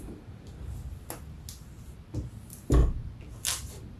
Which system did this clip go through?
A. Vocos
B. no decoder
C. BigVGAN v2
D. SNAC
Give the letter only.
B